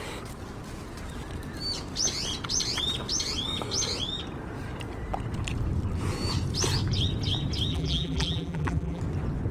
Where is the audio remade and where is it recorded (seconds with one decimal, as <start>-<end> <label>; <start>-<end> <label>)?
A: 0.0-7.7 recorded; 7.7-9.0 remade; 9.0-9.5 recorded